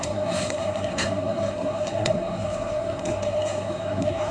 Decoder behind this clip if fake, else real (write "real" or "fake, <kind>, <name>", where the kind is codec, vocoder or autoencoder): fake, codec, SNAC